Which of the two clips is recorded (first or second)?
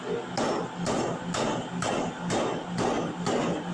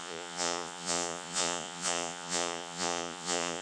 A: first